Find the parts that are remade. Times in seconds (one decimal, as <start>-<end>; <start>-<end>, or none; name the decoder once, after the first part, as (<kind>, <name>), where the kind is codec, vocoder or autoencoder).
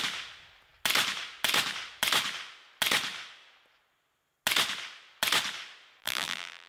6.0-6.7 (vocoder, BigVGAN v2)